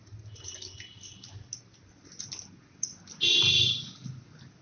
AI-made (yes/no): no